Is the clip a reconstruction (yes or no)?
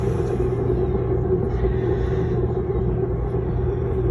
no